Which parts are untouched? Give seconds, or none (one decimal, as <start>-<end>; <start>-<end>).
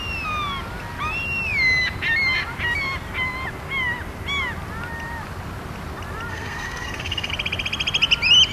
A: 0.0-6.3; 7.3-8.5